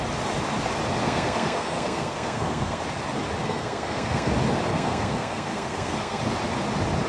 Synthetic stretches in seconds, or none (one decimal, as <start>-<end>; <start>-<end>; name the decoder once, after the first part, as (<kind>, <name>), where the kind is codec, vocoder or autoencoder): 1.0-2.8 (codec, SNAC); 3.4-4.3; 4.7-6.2